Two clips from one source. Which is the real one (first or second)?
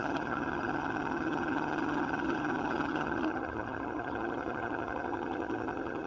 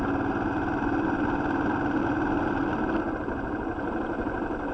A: second